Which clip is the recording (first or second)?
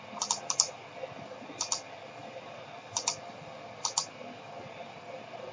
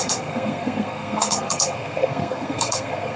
first